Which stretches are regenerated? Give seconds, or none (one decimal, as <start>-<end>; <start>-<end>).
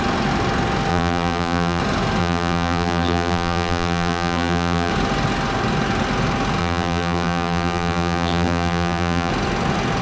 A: 0.9-1.8; 2.2-4.9; 6.6-9.3